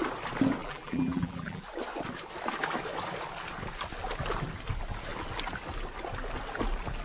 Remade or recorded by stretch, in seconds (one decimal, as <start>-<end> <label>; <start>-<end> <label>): 0.0-0.6 recorded; 0.6-1.6 remade; 1.6-7.0 recorded